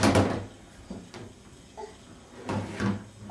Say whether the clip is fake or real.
real